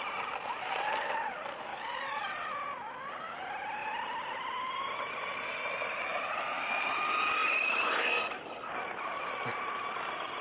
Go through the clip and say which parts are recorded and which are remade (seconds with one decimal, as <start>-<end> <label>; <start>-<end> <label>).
0.0-3.8 recorded; 3.8-4.8 remade; 4.8-6.1 recorded; 6.1-6.9 remade; 6.9-10.4 recorded